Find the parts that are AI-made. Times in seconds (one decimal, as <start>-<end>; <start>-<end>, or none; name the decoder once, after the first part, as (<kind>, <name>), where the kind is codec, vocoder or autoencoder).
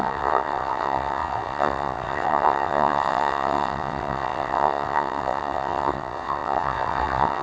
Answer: 0.0-7.4 (vocoder, WaveNeXt)